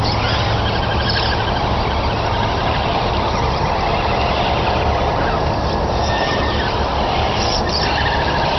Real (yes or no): yes